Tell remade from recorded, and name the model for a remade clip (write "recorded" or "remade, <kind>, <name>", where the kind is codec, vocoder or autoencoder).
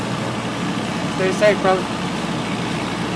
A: recorded